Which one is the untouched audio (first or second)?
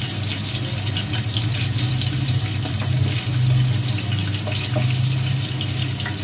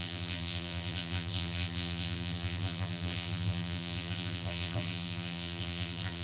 first